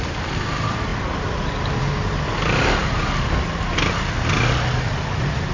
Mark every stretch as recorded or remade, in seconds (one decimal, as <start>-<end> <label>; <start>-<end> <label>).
0.0-5.5 recorded